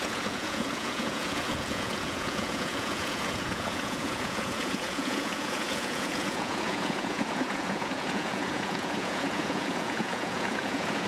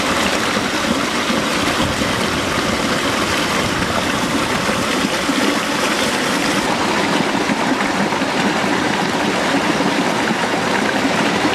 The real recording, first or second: second